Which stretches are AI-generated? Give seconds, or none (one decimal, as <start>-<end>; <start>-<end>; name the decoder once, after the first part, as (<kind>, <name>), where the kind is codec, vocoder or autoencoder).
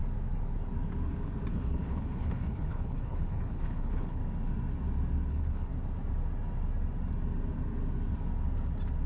1.5-4.2 (codec, HILCodec); 5.3-5.7